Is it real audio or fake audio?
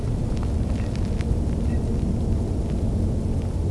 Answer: real